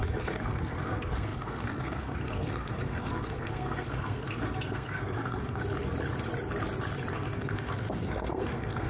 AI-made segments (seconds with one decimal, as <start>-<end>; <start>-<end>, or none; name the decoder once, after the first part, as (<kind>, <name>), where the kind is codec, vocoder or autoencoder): 0.0-5.6 (codec, SNAC); 7.1-8.9